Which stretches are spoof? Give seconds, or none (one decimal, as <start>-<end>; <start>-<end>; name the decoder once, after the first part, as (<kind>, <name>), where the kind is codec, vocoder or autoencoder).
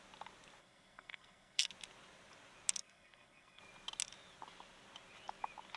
0.6-1.7 (codec, SNAC); 2.8-3.6